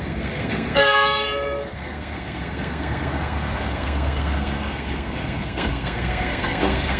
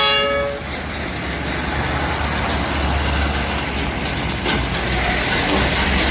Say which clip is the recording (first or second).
second